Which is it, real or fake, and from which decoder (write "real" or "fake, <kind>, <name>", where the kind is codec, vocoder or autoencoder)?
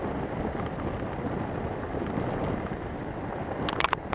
real